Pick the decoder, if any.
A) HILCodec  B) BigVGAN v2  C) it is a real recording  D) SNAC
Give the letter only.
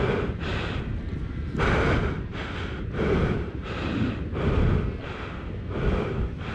C